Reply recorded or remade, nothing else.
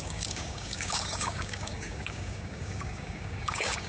remade